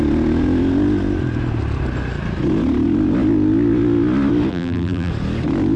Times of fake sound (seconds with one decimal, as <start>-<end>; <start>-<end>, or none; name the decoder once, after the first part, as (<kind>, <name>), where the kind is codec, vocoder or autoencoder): 4.5-5.1 (vocoder, BigVGAN v2)